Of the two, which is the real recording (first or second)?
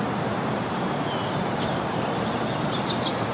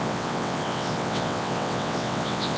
first